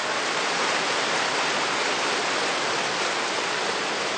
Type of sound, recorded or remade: recorded